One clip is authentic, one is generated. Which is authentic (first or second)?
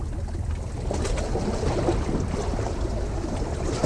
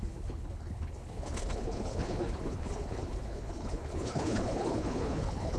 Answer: first